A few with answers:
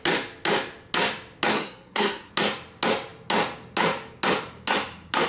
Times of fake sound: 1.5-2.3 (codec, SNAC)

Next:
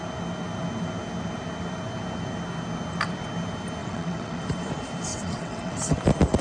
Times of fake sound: 3.8-4.4 (vocoder, WaveNeXt); 5.1-6.0

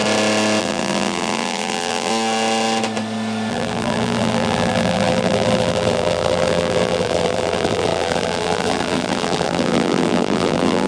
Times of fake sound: 0.6-2.1 (vocoder, BigVGAN v2); 3.5-10.9